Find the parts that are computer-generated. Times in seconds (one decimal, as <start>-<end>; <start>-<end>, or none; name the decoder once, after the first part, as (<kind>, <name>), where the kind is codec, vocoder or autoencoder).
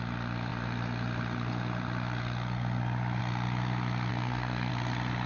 4.1-4.7 (codec, SNAC)